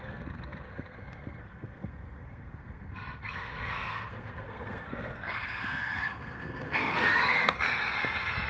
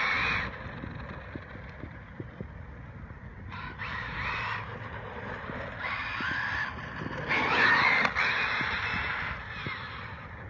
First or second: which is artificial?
first